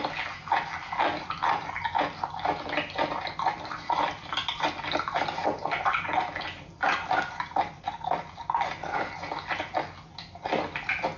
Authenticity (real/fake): real